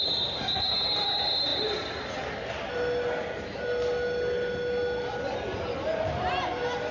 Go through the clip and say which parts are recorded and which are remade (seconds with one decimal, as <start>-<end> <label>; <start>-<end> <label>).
0.0-6.9 recorded